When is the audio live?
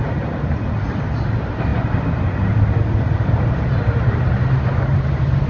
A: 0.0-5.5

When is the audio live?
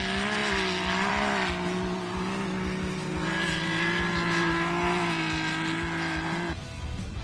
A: 0.0-7.2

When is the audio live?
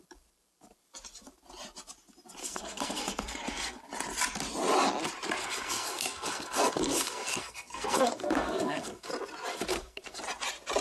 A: 0.0-2.4; 3.9-5.4; 9.1-9.5; 10.2-10.8